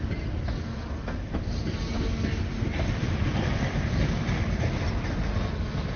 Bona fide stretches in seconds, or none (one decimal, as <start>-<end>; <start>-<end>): 0.0-0.8; 1.9-2.7; 4.1-6.0